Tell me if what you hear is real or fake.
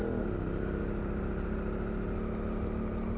real